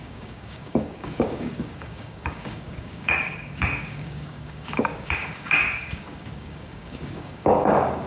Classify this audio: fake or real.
fake